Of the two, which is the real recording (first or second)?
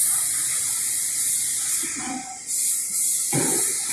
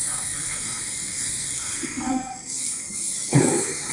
first